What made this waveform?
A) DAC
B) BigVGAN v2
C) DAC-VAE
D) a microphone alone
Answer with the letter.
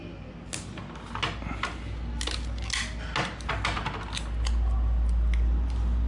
D